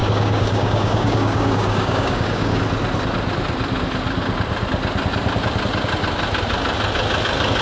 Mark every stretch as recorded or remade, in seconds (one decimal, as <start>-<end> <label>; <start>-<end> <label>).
0.0-2.6 remade; 2.6-7.6 recorded